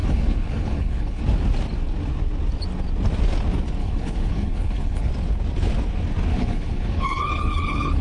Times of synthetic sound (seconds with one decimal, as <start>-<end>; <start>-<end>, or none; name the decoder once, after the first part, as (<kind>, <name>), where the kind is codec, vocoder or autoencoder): 0.0-1.2 (codec, HILCodec); 3.8-5.1; 6.3-8.0

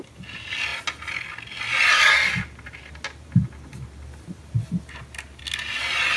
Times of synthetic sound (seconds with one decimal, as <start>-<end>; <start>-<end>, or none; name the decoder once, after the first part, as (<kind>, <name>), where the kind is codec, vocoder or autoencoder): none

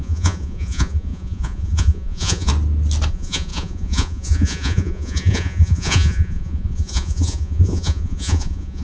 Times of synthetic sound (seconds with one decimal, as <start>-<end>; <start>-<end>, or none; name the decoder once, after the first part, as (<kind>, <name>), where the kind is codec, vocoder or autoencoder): 0.0-2.5 (vocoder, Vocos); 3.1-8.8

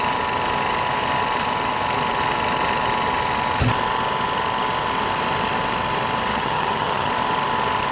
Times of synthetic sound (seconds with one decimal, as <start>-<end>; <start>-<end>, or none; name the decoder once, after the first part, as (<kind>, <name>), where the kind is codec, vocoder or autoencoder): 6.3-7.1 (vocoder, HiFi-GAN)